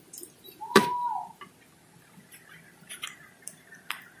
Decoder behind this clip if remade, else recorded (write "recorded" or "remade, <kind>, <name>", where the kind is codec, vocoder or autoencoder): remade, vocoder, BigVGAN v2